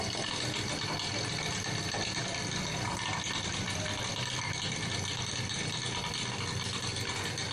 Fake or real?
real